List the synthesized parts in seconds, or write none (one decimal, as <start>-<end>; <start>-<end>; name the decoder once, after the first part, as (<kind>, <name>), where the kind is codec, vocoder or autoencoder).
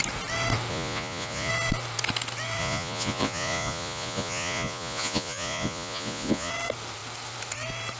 0.7-1.5 (vocoder, Vocos); 2.6-6.5